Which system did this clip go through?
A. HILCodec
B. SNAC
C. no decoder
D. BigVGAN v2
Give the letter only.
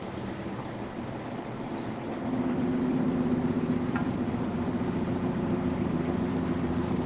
D